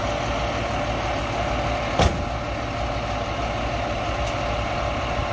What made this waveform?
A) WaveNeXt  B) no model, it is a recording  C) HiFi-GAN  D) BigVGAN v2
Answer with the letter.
B